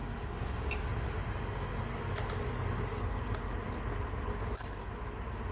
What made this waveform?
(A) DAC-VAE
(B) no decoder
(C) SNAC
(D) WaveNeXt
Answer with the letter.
B